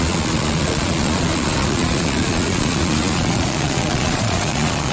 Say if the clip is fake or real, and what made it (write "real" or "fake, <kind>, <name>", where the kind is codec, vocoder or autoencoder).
fake, vocoder, Vocos